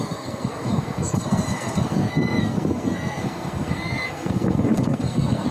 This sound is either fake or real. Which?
fake